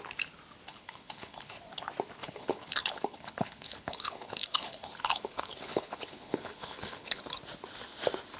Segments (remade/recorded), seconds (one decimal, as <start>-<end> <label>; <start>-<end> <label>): 0.0-0.7 recorded; 0.7-1.6 remade; 1.6-2.2 recorded; 2.2-7.2 remade; 7.2-8.4 recorded